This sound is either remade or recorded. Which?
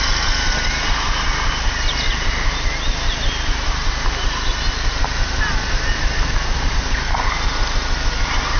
recorded